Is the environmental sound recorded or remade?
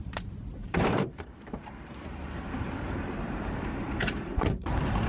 remade